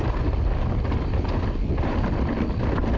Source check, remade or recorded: remade